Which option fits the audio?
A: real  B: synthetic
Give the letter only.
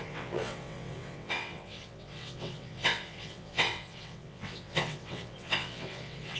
B